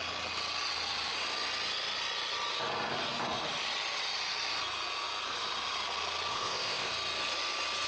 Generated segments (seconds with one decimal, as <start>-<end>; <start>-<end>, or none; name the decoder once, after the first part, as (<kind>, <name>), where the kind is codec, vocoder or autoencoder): 6.3-6.9 (codec, ZipCodec)